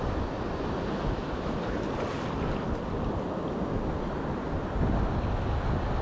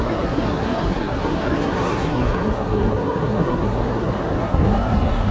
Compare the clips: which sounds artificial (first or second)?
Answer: second